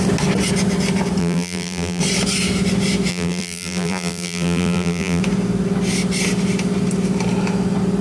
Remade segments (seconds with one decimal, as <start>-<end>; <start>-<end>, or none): 1.2-2.0; 3.1-5.2